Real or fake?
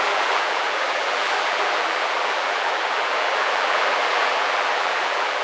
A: fake